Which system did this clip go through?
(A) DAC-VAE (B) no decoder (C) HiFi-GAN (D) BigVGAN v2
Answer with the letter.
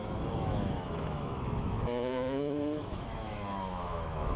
A